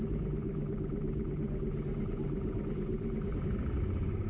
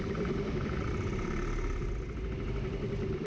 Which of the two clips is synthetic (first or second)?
second